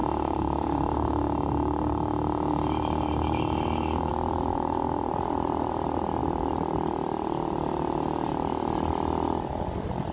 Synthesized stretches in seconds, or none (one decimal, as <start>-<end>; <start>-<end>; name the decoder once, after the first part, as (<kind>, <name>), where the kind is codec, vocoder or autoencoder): 0.0-4.1 (codec, DAC); 4.5-5.1